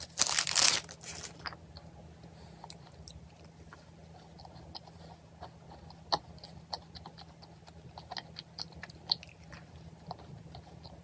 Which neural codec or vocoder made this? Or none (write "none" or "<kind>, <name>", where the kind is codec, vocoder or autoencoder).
none